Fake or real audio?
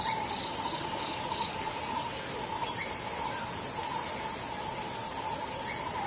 real